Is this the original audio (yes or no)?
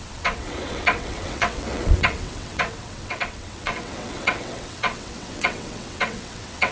no